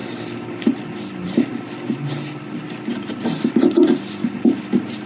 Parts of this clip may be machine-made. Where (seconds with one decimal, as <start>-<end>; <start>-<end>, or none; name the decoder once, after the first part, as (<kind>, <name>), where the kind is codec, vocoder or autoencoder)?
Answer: none